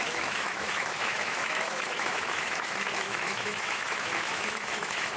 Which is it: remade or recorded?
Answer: remade